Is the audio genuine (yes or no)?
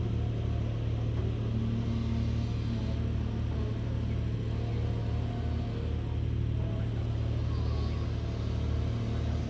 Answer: yes